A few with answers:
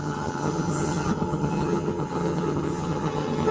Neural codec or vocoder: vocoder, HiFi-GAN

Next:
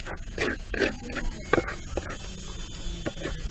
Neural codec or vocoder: vocoder, Vocos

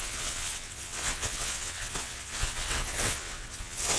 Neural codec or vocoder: vocoder, WaveNeXt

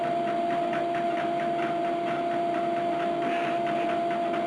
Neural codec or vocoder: none